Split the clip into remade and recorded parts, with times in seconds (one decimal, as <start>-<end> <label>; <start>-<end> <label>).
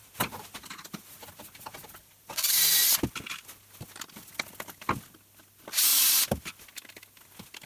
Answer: 0.0-7.7 recorded